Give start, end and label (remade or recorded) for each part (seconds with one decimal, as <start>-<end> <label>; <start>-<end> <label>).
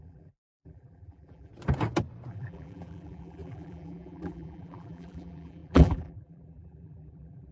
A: 0.0-1.5 remade; 1.5-2.3 recorded; 2.3-7.5 remade